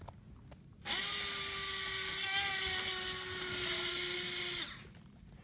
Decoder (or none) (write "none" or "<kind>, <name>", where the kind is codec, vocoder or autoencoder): none